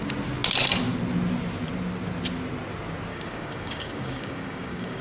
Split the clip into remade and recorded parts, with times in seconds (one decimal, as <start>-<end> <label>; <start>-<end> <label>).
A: 0.0-3.1 recorded; 3.1-5.0 remade